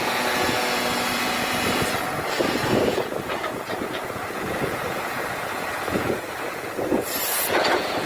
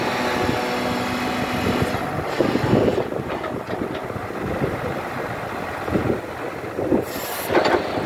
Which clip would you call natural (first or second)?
second